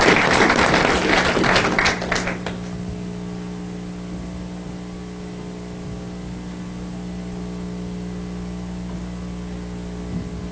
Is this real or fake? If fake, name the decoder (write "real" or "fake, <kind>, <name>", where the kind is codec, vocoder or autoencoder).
real